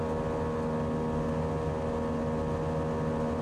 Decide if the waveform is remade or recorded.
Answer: recorded